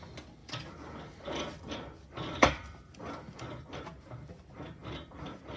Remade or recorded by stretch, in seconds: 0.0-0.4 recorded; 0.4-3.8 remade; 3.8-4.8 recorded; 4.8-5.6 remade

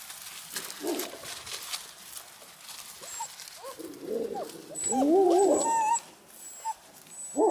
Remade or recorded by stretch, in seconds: 0.0-4.8 recorded; 4.8-5.9 remade; 5.9-7.5 recorded

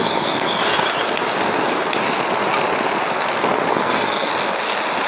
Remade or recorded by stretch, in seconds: 0.0-0.6 remade; 0.6-3.7 recorded; 3.7-4.3 remade; 4.3-5.1 recorded

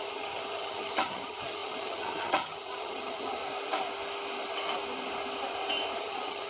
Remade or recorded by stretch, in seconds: 0.0-3.4 remade; 3.4-6.0 recorded; 6.0-6.5 remade

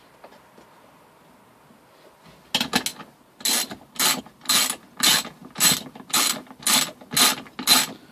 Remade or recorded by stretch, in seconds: 0.0-8.1 recorded